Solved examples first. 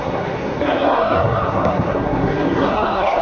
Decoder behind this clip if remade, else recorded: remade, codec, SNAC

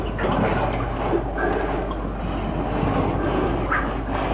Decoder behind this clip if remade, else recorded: recorded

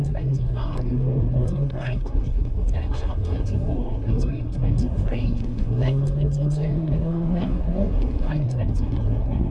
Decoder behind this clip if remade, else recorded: remade, codec, SNAC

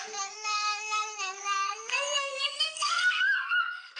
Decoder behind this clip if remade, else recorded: remade, codec, SNAC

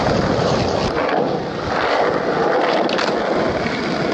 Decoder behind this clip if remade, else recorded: recorded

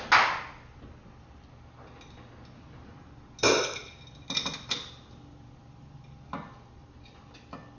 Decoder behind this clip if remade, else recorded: recorded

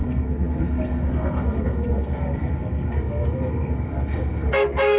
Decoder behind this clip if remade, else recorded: remade, codec, SNAC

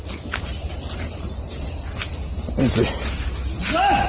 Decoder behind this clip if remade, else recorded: recorded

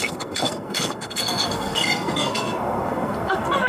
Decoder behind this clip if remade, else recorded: remade, codec, SNAC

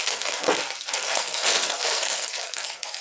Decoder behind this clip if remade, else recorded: remade, codec, SNAC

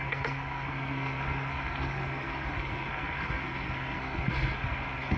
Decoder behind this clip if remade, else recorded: remade, codec, SNAC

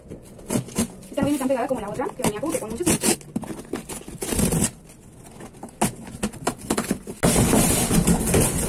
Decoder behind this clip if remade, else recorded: recorded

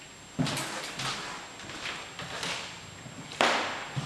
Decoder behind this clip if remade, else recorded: recorded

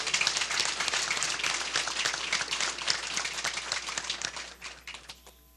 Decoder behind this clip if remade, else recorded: recorded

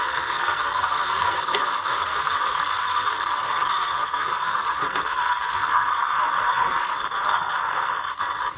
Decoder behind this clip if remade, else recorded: remade, codec, SNAC